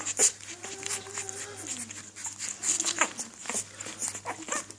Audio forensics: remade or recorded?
recorded